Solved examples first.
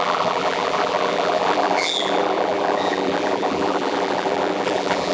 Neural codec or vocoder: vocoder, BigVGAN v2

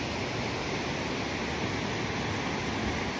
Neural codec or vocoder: none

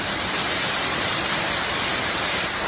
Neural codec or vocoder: vocoder, BigVGAN v2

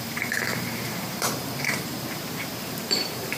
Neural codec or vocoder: vocoder, BigVGAN v2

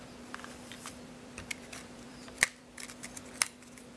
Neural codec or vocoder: vocoder, BigVGAN v2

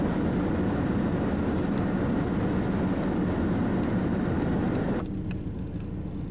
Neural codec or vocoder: none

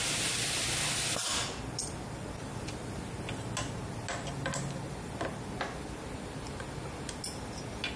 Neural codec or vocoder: none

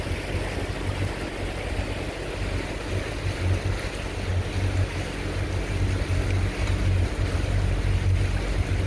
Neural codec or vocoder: none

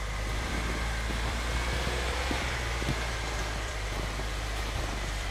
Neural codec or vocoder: vocoder, BigVGAN v2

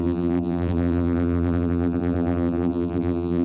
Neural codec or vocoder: vocoder, BigVGAN v2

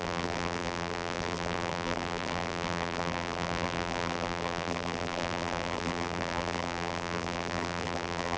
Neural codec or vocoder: vocoder, BigVGAN v2